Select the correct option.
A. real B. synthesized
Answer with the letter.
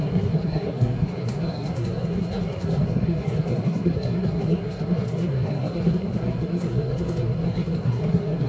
B